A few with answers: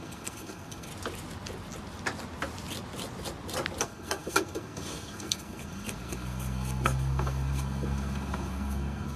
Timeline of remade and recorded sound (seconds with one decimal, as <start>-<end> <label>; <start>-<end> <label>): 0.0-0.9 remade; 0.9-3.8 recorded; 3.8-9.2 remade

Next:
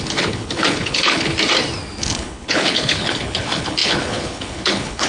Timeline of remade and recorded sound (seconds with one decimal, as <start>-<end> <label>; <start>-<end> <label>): 0.0-1.3 remade; 1.3-2.0 recorded; 2.0-5.1 remade

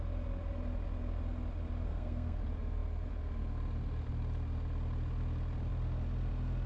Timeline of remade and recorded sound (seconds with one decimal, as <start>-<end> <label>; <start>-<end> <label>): 0.0-1.9 recorded; 1.9-2.4 remade; 2.4-6.7 recorded